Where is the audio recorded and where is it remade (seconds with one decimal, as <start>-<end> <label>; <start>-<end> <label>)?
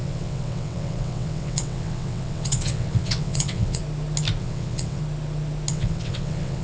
0.0-3.8 remade; 3.8-4.4 recorded; 4.4-5.0 remade; 5.0-5.7 recorded; 5.7-6.6 remade